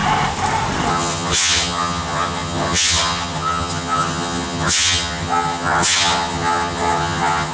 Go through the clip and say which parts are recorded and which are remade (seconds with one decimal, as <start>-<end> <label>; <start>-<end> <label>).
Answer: 0.0-0.9 recorded; 0.9-7.5 remade